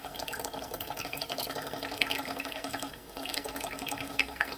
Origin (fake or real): fake